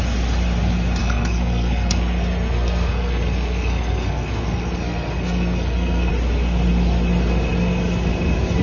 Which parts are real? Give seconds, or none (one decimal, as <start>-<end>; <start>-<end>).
0.0-1.0; 6.1-8.6